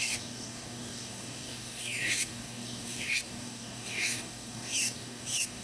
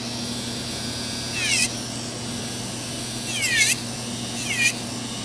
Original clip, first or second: second